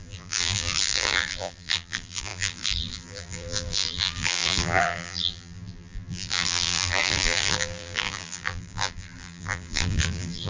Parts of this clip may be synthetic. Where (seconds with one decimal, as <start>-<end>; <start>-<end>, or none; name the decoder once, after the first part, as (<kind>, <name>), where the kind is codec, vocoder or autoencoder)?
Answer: 0.0-10.5 (vocoder, BigVGAN v2)